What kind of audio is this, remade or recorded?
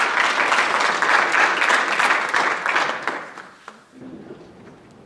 recorded